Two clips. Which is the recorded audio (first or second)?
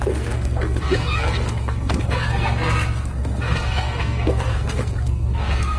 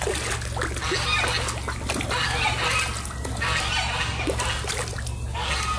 second